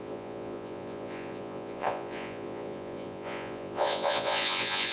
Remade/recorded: remade